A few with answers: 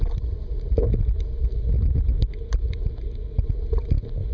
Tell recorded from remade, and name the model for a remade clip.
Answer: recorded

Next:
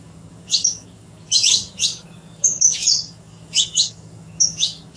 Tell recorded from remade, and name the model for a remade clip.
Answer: remade, codec, DAC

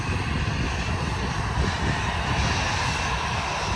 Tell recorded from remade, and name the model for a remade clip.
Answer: recorded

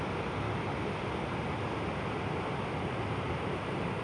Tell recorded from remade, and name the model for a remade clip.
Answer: recorded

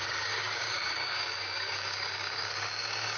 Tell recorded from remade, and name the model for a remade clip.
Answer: remade, codec, DAC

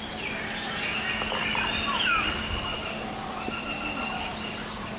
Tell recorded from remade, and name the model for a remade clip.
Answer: recorded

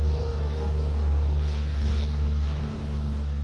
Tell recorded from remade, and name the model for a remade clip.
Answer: remade, codec, DAC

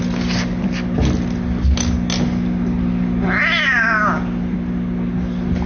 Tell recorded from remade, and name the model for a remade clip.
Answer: recorded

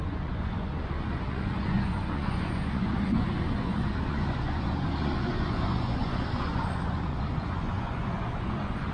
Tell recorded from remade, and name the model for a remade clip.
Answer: remade, vocoder, Vocos